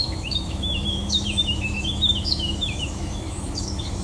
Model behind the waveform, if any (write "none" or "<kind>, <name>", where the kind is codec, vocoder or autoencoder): autoencoder, DAC-VAE